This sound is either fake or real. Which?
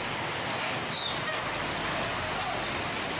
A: real